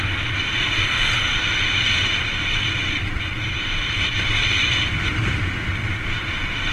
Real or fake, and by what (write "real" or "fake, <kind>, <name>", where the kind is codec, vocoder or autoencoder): real